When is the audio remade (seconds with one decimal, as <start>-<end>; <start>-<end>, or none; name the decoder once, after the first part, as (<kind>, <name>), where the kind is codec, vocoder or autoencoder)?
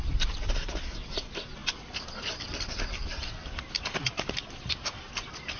3.4-4.0 (vocoder, BigVGAN v2)